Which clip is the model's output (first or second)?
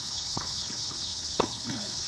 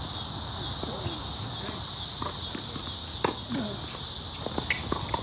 first